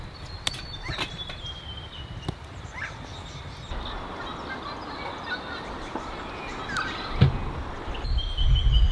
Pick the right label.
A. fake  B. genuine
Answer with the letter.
B